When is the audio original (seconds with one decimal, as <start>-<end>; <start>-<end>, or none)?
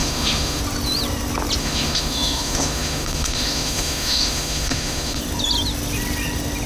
0.6-1.6; 5.2-6.7